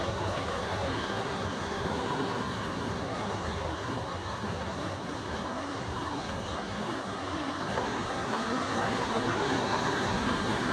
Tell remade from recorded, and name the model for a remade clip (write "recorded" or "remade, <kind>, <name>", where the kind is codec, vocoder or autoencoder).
remade, codec, SNAC